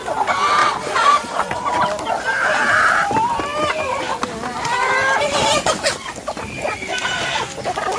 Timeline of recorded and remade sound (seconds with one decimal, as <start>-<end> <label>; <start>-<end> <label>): 0.0-0.6 recorded; 0.6-1.7 remade; 1.7-8.0 recorded